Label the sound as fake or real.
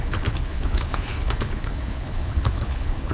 fake